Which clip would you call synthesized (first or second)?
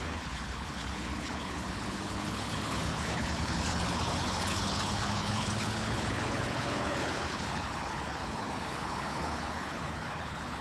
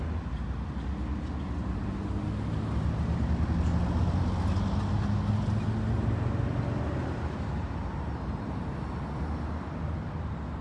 first